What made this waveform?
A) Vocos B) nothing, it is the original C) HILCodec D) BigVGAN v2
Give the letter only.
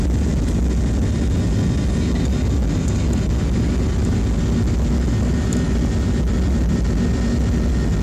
B